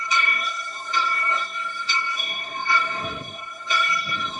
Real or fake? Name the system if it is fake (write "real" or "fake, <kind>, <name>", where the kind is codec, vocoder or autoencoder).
fake, codec, SNAC